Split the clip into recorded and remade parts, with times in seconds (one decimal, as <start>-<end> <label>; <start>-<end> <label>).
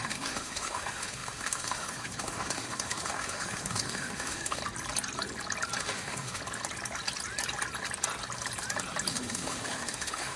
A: 0.0-4.6 remade; 4.6-5.8 recorded; 5.8-6.4 remade; 6.4-9.1 recorded; 9.1-10.4 remade